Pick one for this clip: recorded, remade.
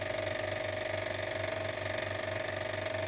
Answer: recorded